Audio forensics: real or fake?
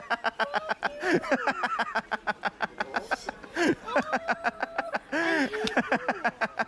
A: real